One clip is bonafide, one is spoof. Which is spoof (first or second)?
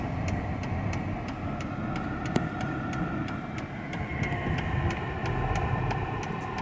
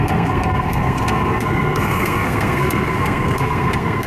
second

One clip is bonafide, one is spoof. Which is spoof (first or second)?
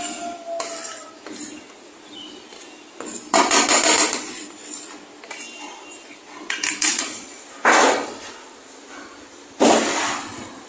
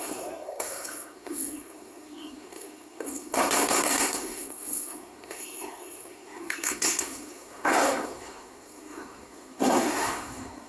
second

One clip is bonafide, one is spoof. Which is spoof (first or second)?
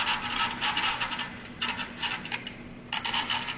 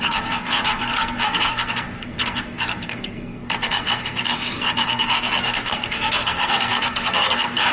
second